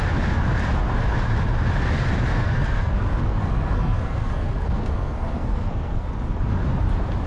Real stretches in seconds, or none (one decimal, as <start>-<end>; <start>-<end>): 0.0-2.3; 6.1-7.3